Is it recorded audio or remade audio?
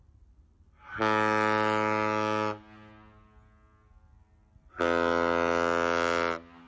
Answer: recorded